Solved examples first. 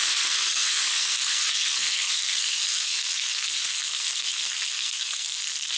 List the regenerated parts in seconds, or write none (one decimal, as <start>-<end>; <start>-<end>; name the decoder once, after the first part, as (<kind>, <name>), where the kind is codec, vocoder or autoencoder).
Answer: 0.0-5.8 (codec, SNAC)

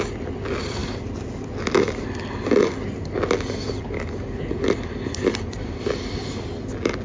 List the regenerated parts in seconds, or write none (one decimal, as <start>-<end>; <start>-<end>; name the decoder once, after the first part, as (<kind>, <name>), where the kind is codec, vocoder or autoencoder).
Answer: none

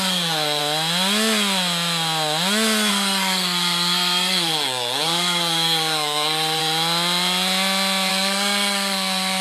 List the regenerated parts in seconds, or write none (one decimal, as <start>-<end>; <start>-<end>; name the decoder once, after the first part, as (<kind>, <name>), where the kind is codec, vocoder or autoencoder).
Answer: 0.0-0.6 (codec, SNAC); 2.9-6.6; 8.1-9.4